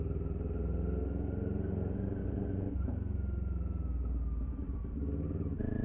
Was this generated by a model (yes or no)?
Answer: no